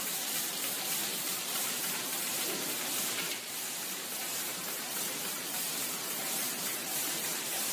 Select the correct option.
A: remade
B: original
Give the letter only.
A